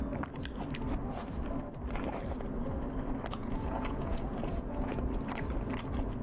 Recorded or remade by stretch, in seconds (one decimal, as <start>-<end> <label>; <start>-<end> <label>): 0.0-3.4 recorded; 3.4-5.0 remade; 5.0-6.2 recorded